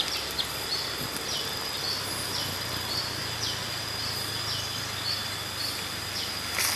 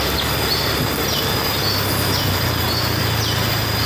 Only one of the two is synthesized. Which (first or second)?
first